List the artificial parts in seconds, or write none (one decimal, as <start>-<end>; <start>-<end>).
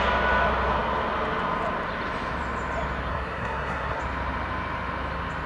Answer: 3.1-4.0